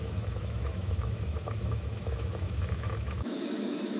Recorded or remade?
remade